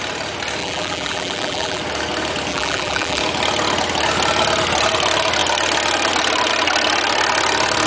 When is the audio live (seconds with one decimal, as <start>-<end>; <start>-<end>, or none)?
0.0-0.6; 1.8-2.5; 3.2-7.9